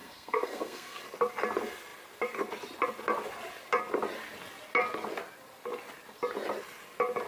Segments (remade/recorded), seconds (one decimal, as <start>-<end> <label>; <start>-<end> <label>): 0.0-1.0 remade; 1.0-7.3 recorded